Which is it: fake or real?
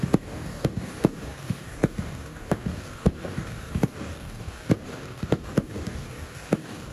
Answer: fake